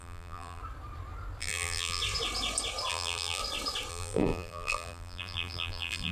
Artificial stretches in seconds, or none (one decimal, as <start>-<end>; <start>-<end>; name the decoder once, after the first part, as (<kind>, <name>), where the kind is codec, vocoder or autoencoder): 0.0-0.6 (vocoder, BigVGAN v2); 1.4-2.0; 2.9-3.4; 3.9-6.1